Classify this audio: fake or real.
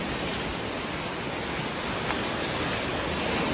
real